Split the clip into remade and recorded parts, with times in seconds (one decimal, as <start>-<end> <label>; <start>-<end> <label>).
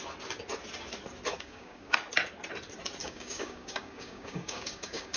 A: 0.0-1.3 recorded; 1.3-1.9 remade; 1.9-3.0 recorded; 3.0-5.2 remade